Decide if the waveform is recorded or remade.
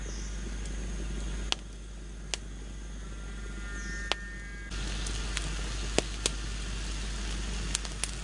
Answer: recorded